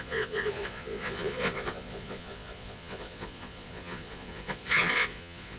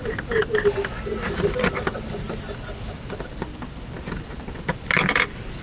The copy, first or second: first